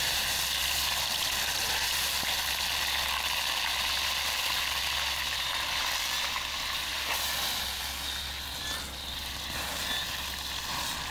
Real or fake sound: real